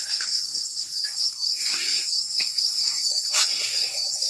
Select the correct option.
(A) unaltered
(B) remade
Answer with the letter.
B